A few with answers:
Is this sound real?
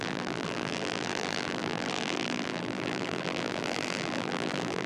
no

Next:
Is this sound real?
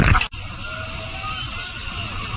yes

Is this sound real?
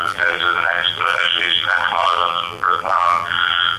no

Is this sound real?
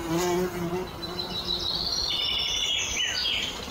yes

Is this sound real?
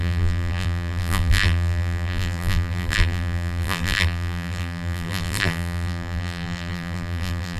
no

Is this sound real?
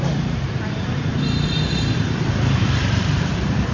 no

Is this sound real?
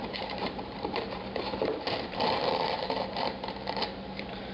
no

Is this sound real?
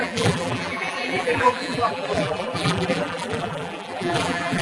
no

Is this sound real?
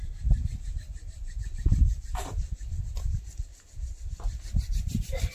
no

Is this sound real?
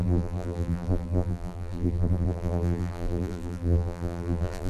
no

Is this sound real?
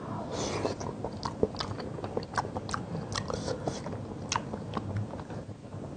yes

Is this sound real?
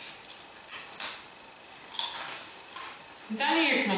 yes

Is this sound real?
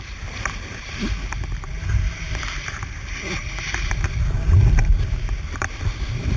no